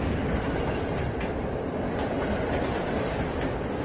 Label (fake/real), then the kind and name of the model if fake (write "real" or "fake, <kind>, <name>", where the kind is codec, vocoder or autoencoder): real